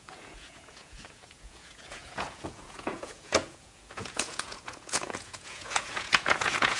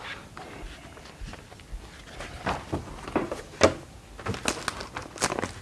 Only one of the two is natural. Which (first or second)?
second